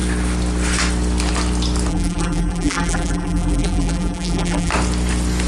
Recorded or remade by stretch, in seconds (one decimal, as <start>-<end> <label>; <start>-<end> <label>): 0.0-1.9 recorded; 1.9-4.7 remade; 4.7-5.5 recorded